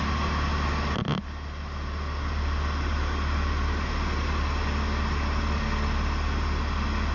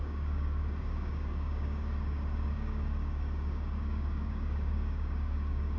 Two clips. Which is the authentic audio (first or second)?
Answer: first